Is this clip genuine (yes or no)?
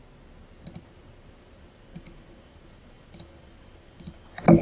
yes